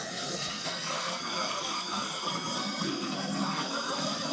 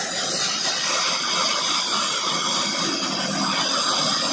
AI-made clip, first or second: first